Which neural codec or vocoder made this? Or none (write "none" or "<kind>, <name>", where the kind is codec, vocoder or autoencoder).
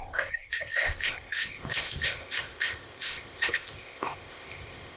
codec, ZipCodec